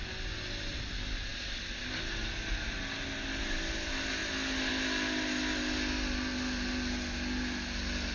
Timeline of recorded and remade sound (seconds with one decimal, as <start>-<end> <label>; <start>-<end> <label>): 0.0-8.1 recorded